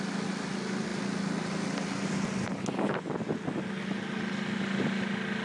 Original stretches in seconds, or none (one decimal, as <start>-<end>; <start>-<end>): 0.0-5.4